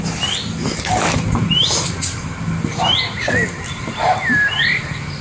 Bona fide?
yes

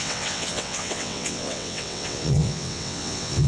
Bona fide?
no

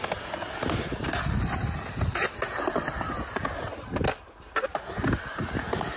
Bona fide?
yes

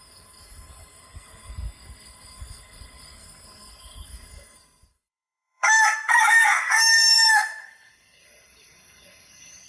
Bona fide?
no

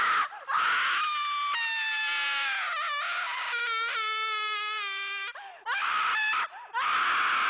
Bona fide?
yes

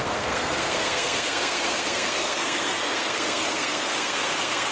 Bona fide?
no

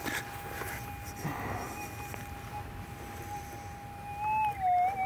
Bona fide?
yes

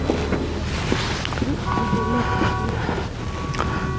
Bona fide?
yes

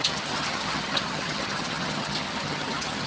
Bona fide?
no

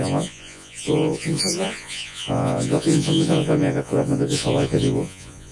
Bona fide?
no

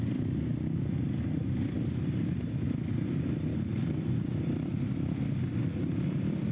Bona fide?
yes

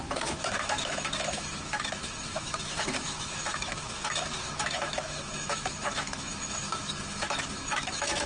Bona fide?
no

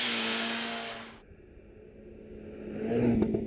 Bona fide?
yes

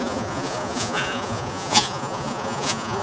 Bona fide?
no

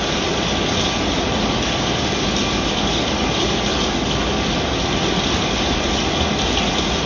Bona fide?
yes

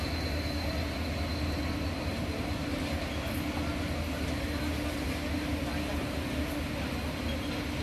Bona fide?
yes